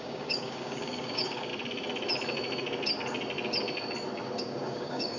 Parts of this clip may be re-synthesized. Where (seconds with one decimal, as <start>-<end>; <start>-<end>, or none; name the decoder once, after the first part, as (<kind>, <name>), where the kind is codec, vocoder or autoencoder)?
0.0-1.5 (codec, DAC); 4.4-5.2